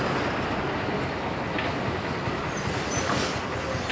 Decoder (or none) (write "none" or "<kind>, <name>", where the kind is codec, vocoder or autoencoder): none